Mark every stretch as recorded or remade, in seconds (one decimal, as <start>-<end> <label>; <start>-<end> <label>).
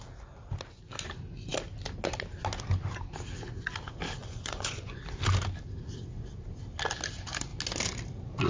0.0-4.2 recorded; 4.2-5.0 remade; 5.0-8.5 recorded